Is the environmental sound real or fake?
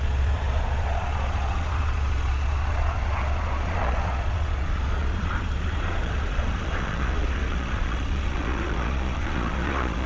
fake